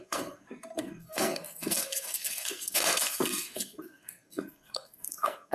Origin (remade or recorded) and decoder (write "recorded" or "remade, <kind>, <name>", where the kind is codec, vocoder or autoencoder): remade, codec, SNAC